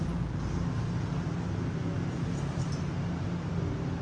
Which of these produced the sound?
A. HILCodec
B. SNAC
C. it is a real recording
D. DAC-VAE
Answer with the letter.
C